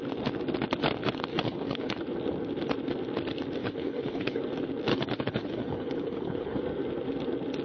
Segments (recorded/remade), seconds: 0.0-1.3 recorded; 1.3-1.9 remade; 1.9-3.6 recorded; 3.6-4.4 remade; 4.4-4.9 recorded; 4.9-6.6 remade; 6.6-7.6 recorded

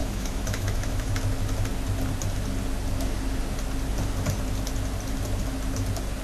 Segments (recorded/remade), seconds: 0.0-1.2 remade; 1.2-6.2 recorded

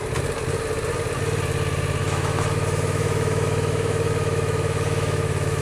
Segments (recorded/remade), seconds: 0.0-2.0 recorded; 2.0-5.6 remade

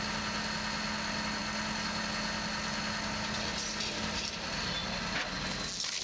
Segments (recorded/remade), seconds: 0.0-6.0 recorded